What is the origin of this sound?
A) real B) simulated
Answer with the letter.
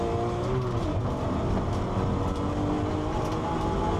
A